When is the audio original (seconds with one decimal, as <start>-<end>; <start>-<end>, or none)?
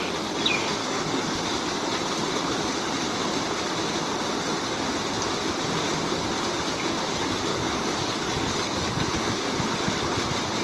0.0-0.8; 1.4-7.5; 9.3-10.6